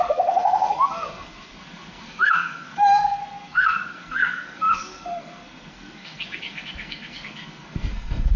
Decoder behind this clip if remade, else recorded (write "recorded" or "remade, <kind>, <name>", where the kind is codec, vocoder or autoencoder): remade, codec, SNAC